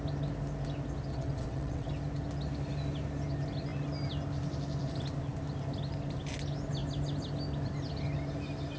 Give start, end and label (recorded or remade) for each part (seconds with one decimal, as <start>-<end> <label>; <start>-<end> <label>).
0.0-1.1 recorded; 1.1-1.9 remade; 1.9-8.8 recorded